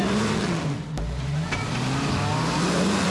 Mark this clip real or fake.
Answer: real